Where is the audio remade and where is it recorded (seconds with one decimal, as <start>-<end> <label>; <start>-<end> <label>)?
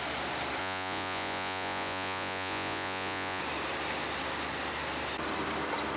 0.0-0.6 recorded; 0.6-3.4 remade; 3.4-6.0 recorded